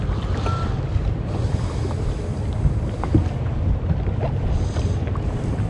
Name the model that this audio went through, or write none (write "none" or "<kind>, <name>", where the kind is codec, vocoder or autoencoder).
none